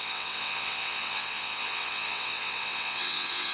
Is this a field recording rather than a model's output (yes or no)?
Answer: no